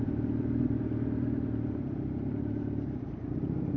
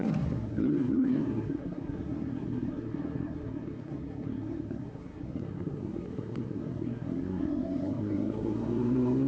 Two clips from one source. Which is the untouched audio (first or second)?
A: first